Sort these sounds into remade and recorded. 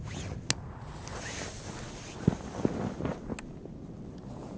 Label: recorded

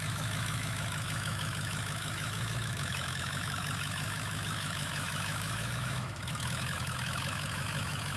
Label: remade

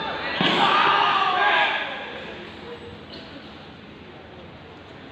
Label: recorded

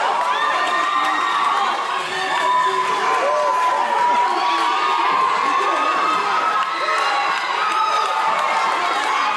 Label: recorded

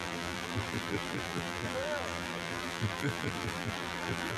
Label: remade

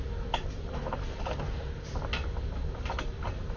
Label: recorded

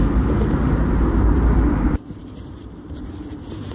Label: remade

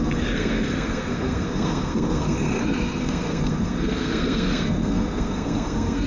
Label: remade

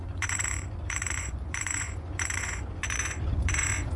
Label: remade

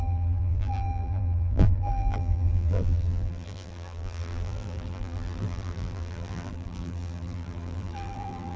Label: remade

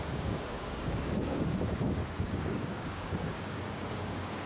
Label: remade